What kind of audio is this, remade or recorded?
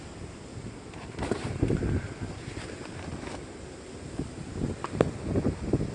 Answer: recorded